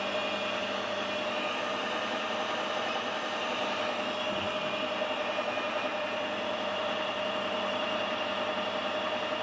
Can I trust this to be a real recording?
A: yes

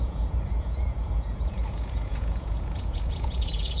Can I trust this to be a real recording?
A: no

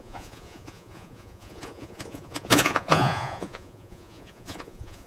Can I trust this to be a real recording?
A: no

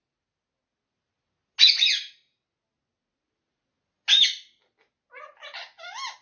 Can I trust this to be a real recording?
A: yes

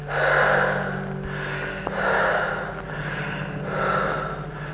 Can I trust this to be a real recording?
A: yes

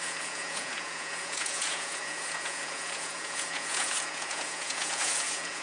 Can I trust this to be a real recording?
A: no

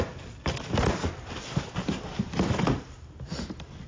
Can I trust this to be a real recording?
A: yes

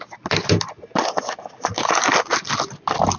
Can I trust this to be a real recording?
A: yes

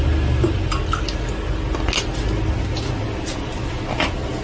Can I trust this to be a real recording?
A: yes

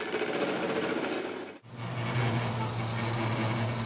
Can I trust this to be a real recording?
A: yes